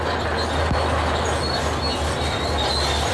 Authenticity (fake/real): real